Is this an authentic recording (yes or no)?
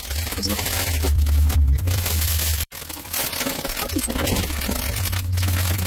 no